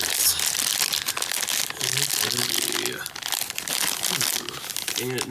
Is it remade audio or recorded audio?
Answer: recorded